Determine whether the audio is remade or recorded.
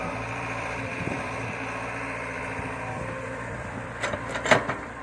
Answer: remade